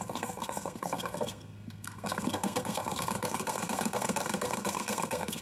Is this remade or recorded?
remade